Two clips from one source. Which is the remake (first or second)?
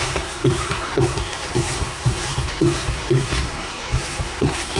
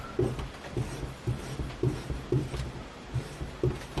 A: first